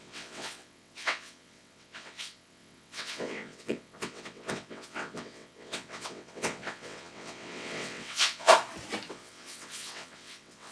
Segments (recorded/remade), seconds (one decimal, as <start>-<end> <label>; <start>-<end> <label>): 0.0-8.5 remade; 8.5-9.1 recorded; 9.1-10.7 remade